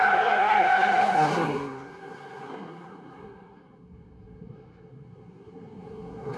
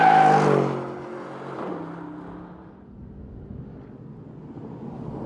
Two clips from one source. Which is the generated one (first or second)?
first